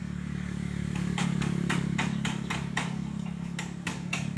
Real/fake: fake